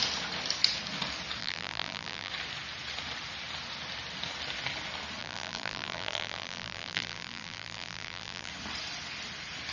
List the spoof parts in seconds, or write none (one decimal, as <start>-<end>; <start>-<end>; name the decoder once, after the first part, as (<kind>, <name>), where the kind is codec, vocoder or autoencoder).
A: 1.4-2.3 (vocoder, BigVGAN v2); 5.2-8.5